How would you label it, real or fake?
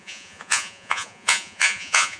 fake